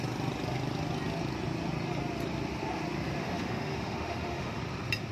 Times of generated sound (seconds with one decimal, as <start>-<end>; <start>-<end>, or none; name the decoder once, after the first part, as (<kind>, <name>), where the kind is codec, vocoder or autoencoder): 3.2-4.6 (autoencoder, DAC-VAE)